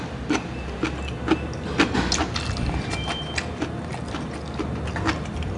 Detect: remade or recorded recorded